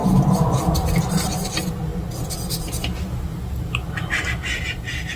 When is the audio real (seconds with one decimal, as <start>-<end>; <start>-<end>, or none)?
0.0-5.2